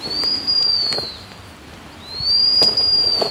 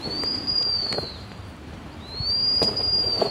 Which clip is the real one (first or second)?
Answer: first